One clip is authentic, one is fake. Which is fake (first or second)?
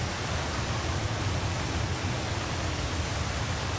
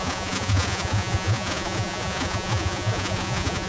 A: second